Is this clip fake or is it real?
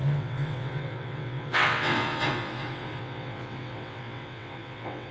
fake